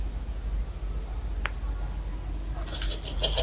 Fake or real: real